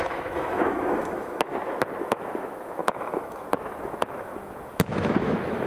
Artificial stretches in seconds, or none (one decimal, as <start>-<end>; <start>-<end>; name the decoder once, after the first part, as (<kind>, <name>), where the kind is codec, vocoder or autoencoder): 0.0-1.5 (autoencoder, DAC-VAE); 2.0-5.7